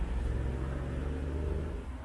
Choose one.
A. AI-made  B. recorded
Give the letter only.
B